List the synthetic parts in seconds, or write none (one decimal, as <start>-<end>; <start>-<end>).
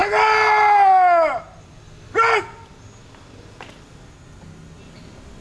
none